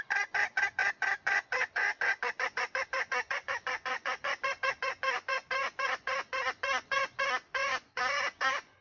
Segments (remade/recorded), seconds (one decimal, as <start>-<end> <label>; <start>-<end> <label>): 0.0-8.8 remade